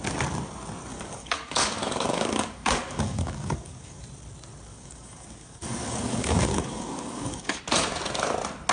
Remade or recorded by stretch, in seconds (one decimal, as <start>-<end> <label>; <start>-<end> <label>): 0.0-0.9 recorded; 0.9-4.0 remade; 4.0-4.7 recorded; 4.7-7.6 remade; 7.6-8.7 recorded

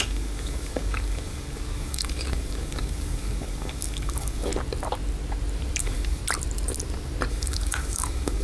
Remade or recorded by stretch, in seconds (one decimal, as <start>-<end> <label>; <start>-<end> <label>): 0.0-4.5 remade; 4.5-5.8 recorded; 5.8-6.2 remade; 6.2-7.3 recorded; 7.3-8.4 remade

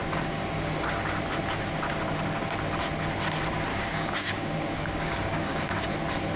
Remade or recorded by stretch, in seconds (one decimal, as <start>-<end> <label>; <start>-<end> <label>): 0.0-3.7 recorded; 3.7-5.9 remade; 5.9-6.4 recorded

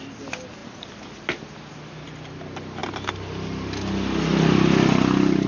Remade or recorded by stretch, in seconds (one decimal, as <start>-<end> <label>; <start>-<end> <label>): 0.0-5.5 recorded